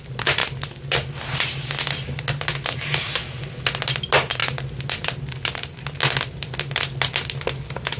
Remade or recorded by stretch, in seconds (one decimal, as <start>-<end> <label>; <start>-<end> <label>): 0.0-8.0 recorded